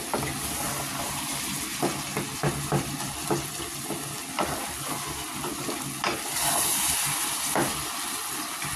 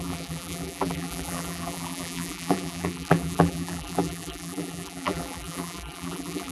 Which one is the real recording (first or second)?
first